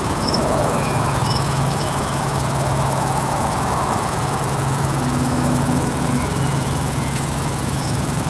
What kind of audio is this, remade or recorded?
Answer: remade